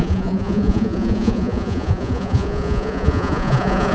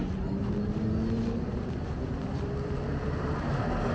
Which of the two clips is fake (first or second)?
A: first